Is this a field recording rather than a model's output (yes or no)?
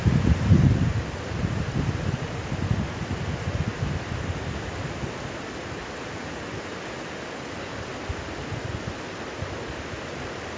yes